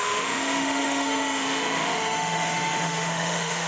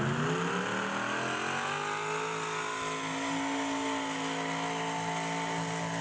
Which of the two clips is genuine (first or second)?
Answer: second